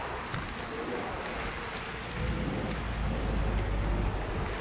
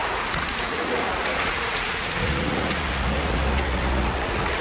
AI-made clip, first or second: second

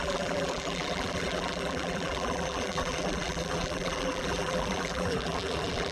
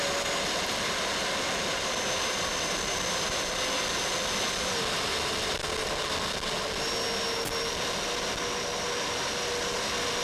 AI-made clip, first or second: first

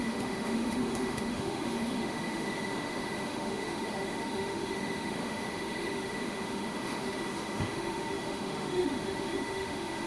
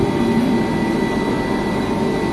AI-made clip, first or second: first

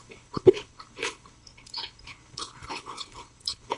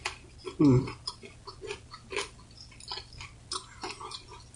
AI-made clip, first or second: first